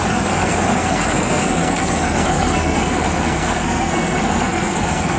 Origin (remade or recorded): remade